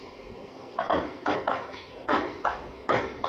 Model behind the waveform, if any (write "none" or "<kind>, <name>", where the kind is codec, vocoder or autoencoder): codec, SNAC